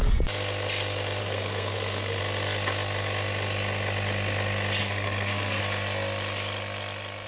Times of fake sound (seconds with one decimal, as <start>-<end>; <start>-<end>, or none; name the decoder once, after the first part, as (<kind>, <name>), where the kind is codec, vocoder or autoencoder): 1.2-2.2 (codec, SNAC); 4.8-5.6